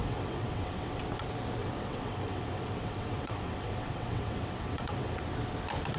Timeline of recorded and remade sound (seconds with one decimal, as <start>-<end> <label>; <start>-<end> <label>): 0.0-1.0 remade; 1.0-1.6 recorded; 1.6-5.2 remade; 5.2-6.0 recorded